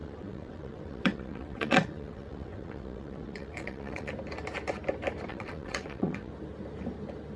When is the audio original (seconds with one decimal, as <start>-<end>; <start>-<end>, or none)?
4.1-5.3; 6.3-7.4